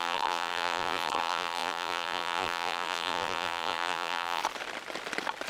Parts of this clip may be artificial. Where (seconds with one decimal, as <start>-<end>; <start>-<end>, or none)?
0.0-4.4